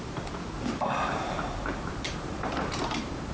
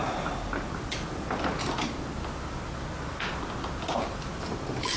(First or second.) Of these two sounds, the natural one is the second